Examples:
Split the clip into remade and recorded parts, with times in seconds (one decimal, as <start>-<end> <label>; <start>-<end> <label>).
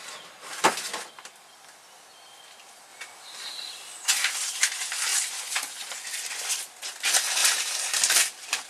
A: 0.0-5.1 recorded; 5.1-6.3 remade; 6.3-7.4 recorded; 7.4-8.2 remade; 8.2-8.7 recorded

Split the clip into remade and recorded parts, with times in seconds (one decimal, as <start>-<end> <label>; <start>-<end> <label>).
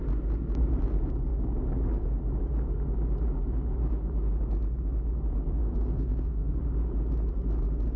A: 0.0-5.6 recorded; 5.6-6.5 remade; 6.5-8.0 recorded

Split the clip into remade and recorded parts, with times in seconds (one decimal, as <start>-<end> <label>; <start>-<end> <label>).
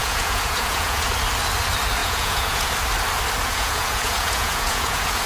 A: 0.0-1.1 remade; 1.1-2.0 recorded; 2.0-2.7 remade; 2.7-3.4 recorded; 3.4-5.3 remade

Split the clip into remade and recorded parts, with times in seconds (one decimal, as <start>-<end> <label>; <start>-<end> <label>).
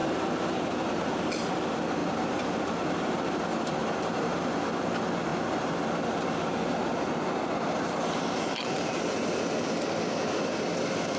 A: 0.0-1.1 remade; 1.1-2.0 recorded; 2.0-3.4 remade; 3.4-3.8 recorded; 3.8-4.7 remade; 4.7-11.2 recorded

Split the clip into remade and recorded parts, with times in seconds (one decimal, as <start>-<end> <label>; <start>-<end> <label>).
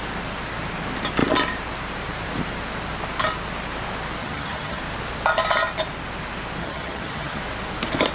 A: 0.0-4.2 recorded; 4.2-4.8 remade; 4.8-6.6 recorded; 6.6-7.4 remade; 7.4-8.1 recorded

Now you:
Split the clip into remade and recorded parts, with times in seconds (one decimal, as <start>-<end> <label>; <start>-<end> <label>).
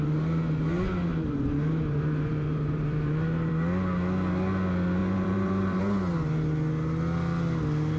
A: 0.0-1.1 recorded; 1.1-3.5 remade; 3.5-5.0 recorded; 5.0-5.8 remade; 5.8-8.0 recorded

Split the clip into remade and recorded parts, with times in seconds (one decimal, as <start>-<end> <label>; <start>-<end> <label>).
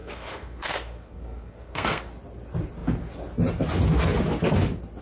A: 0.0-2.0 remade; 2.0-5.0 recorded